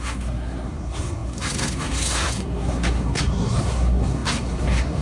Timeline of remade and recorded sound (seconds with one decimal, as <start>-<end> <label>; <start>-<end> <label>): 0.0-5.0 remade